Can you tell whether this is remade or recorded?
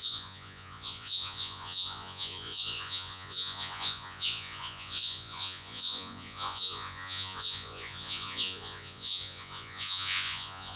remade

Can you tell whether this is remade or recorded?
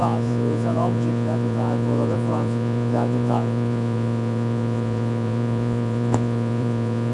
remade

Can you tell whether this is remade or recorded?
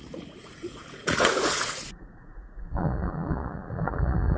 remade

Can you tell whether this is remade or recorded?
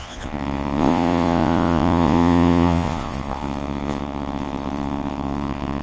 remade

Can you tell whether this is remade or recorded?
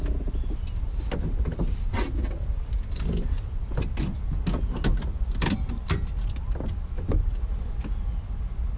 recorded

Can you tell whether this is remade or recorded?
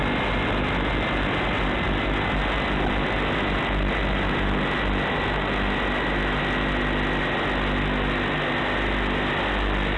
recorded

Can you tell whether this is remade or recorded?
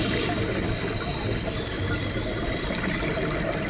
recorded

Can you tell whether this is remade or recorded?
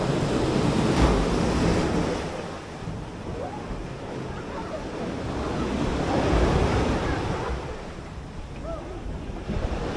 recorded